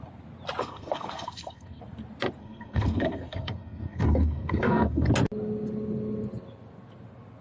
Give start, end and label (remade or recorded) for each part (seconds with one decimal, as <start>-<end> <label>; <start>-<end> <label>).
0.0-0.6 recorded; 0.6-1.8 remade; 1.8-2.4 recorded; 2.4-5.1 remade; 5.1-7.4 recorded